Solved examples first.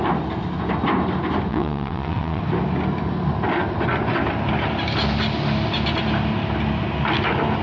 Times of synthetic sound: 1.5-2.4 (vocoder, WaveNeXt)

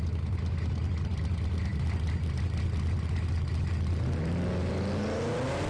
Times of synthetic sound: none

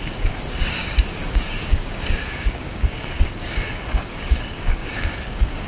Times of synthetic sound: 0.0-5.7 (codec, DAC)

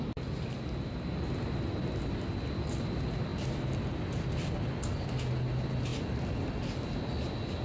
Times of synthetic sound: none

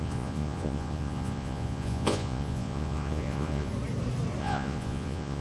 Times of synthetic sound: 0.0-3.7 (vocoder, Vocos); 4.4-5.4

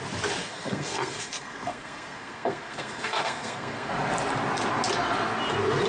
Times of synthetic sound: 0.4-3.9 (codec, SNAC)